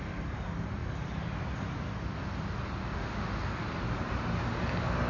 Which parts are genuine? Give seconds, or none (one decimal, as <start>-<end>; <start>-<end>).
0.0-2.8; 3.3-5.1